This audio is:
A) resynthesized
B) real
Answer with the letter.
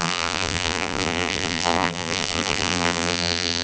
A